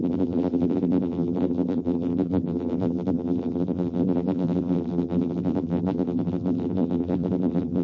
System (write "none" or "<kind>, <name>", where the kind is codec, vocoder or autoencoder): vocoder, BigVGAN v2